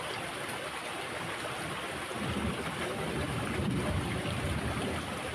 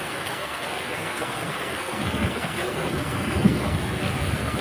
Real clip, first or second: first